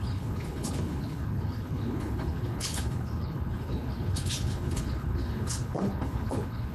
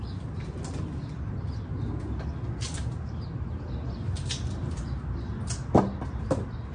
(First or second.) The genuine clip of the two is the second